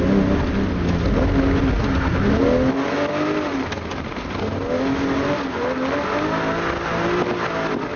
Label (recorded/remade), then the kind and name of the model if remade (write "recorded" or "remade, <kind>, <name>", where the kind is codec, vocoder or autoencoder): recorded